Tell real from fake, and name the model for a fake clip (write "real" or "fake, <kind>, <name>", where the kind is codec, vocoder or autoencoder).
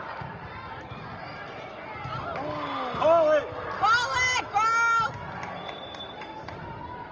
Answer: real